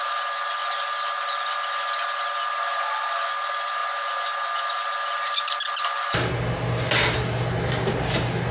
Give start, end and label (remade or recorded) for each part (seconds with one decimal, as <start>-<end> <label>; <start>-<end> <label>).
0.0-8.5 recorded

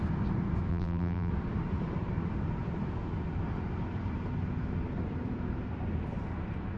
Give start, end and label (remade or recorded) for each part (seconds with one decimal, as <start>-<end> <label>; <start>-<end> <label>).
0.0-0.7 recorded; 0.7-1.3 remade; 1.3-6.8 recorded

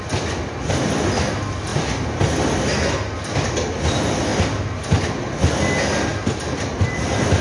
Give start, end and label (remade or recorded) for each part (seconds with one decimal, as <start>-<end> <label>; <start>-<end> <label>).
0.0-7.4 recorded

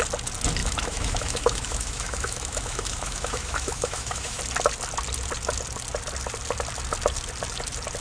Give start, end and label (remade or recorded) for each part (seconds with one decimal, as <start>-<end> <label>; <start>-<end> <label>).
0.0-0.6 recorded; 0.6-4.4 remade; 4.4-8.0 recorded

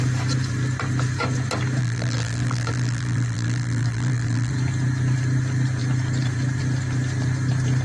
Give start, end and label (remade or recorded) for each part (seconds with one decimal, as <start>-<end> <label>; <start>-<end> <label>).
0.0-1.8 recorded; 1.8-4.5 remade; 4.5-7.8 recorded

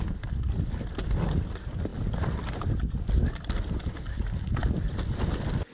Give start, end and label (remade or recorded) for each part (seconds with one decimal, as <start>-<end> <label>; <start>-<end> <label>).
0.0-5.7 recorded